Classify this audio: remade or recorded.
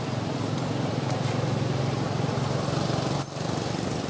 recorded